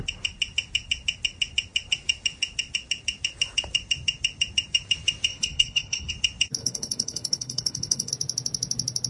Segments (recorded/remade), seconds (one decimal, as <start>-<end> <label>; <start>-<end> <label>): 0.0-5.3 recorded; 5.3-6.1 remade; 6.1-6.6 recorded; 6.6-8.1 remade; 8.1-9.1 recorded